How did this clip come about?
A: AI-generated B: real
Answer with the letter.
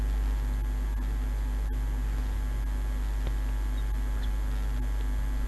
B